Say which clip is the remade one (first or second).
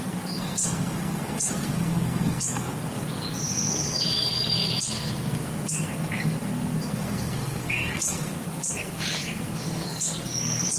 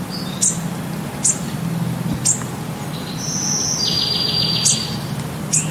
first